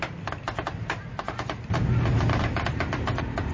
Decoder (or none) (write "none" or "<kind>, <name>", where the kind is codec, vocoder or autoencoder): none